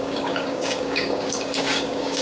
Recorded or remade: remade